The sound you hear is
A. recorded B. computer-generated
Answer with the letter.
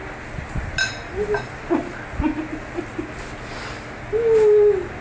A